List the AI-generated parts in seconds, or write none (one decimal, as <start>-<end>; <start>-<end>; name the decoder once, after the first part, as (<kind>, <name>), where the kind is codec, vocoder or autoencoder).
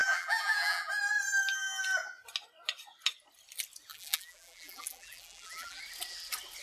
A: 0.0-0.9 (vocoder, BigVGAN v2); 3.9-5.8